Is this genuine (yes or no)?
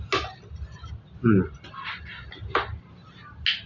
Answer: yes